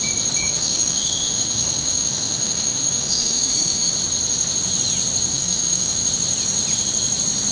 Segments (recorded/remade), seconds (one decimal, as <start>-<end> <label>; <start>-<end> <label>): 0.0-0.4 recorded; 0.4-3.9 remade; 3.9-5.3 recorded; 5.3-6.1 remade; 6.1-7.5 recorded